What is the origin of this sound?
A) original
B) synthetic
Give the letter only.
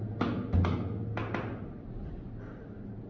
A